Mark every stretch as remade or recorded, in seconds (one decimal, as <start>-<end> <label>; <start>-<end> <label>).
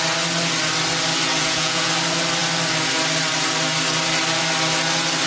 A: 0.0-1.4 recorded; 1.4-1.9 remade; 1.9-5.3 recorded